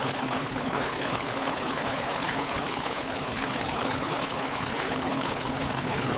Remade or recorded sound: remade